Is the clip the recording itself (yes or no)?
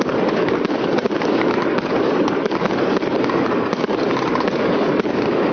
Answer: no